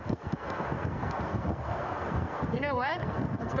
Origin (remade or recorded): remade